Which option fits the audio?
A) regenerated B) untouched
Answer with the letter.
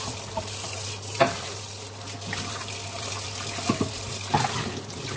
B